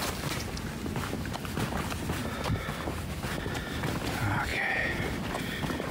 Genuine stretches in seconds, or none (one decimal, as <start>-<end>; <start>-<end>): 0.0-4.5; 5.0-5.9